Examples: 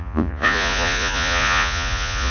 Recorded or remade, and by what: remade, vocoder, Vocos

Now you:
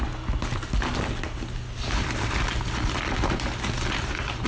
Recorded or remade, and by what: recorded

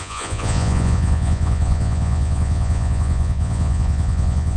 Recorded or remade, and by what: remade, vocoder, Vocos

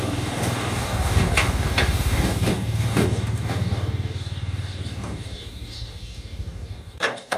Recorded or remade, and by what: remade, codec, DAC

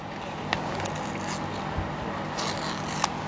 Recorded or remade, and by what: recorded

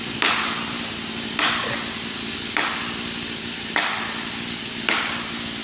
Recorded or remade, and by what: recorded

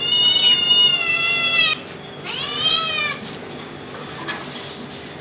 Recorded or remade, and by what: recorded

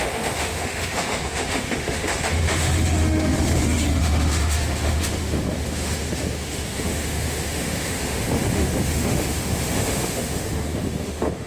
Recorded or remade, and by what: remade, autoencoder, DAC-VAE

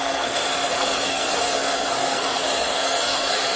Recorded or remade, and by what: remade, codec, SNAC